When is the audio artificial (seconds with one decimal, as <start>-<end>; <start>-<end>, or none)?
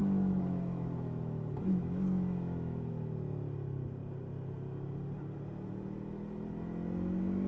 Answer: 0.0-2.9